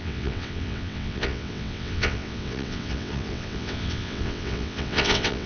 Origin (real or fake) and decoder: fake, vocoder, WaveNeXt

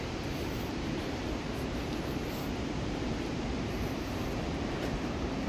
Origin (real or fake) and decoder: fake, vocoder, BigVGAN v2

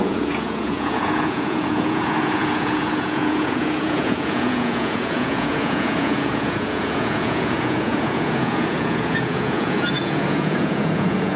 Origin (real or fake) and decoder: fake, vocoder, Vocos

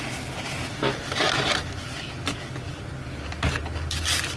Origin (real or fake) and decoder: real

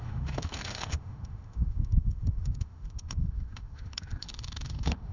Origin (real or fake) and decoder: fake, autoencoder, DAC-VAE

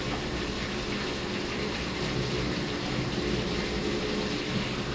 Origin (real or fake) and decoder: real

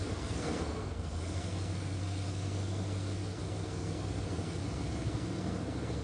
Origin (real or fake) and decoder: fake, codec, SNAC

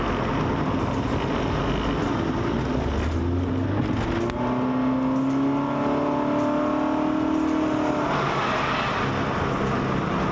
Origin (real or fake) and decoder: real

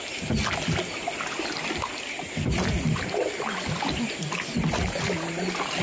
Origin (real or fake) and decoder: real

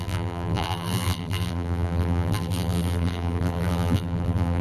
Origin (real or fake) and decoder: fake, vocoder, BigVGAN v2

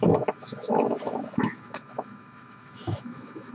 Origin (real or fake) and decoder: fake, autoencoder, DAC-VAE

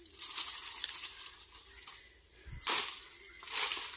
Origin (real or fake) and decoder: real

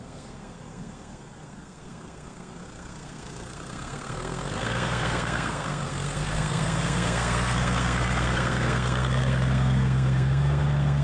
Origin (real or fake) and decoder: fake, codec, SNAC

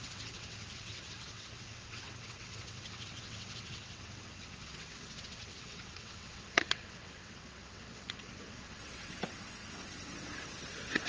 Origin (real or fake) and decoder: fake, vocoder, WaveNeXt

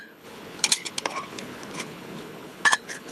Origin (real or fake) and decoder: fake, codec, HILCodec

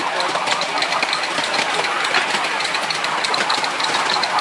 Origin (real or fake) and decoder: real